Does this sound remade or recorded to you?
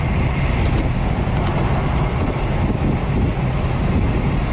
recorded